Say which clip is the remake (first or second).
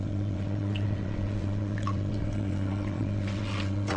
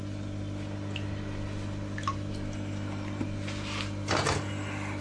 first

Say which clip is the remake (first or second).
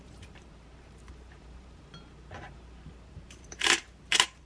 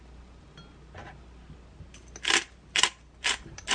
first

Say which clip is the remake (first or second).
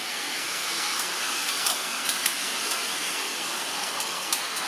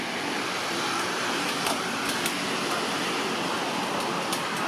first